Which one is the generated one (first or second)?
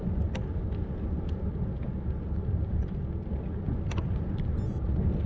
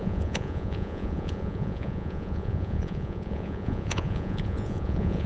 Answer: second